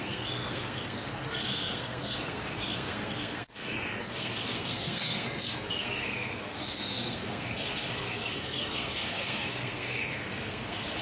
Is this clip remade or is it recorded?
remade